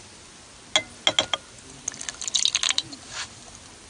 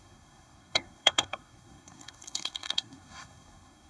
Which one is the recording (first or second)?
first